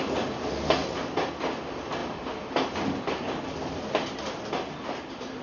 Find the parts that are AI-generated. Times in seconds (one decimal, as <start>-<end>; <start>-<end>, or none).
0.8-1.4